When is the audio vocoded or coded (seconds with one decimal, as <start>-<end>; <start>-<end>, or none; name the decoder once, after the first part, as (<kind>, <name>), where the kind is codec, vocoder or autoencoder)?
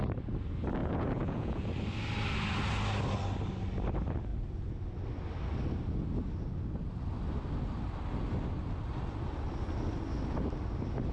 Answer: 0.8-1.6 (vocoder, Vocos)